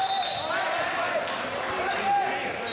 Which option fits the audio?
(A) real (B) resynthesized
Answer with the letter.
A